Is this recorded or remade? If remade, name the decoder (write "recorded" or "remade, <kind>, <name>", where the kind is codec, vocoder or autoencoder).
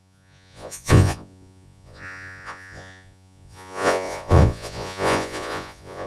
remade, vocoder, Vocos